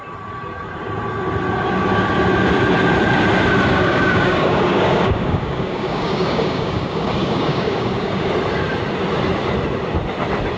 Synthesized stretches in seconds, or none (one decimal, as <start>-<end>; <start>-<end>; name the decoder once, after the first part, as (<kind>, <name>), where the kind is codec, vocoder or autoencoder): 3.7-8.3 (codec, DAC)